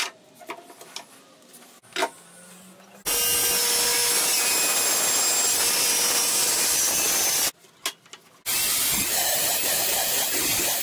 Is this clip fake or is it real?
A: real